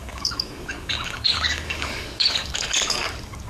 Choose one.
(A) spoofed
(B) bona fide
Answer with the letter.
A